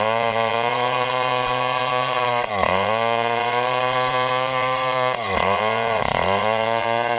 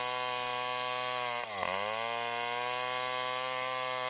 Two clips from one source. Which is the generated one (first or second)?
first